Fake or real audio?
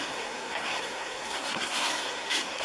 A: fake